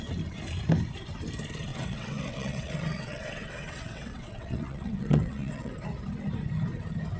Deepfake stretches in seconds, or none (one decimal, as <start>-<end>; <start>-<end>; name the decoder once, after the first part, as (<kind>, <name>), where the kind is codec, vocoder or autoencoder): 1.7-5.7 (vocoder, WaveNeXt)